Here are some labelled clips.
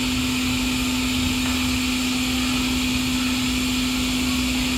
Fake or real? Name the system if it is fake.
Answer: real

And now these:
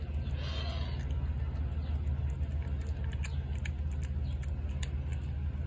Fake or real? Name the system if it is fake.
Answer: real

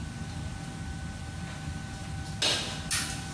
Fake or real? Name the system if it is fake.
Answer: real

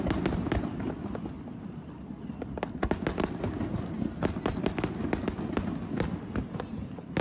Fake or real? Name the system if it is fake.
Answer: real